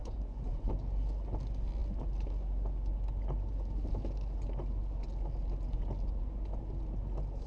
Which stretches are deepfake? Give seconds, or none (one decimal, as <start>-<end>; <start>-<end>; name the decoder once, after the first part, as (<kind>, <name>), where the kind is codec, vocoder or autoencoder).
0.0-0.7 (vocoder, Vocos)